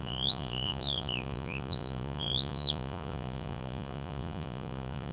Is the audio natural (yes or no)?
no